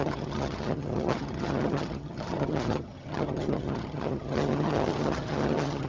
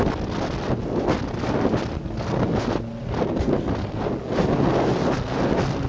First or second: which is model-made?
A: first